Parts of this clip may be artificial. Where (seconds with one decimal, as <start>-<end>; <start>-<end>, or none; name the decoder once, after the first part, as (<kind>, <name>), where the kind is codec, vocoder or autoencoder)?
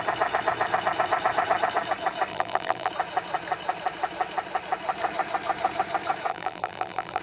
2.3-2.9 (vocoder, BigVGAN v2); 6.3-7.2